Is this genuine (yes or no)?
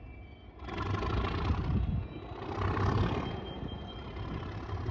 yes